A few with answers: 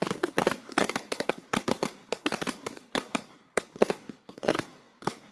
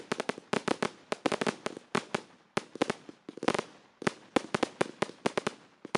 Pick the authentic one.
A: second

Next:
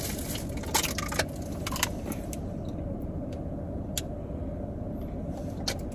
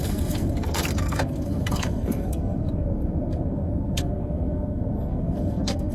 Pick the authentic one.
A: first